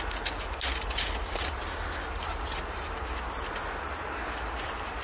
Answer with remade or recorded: recorded